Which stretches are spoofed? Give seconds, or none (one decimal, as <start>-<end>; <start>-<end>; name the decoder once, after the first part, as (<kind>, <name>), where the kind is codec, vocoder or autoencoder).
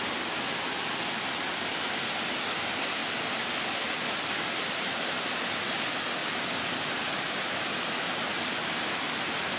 none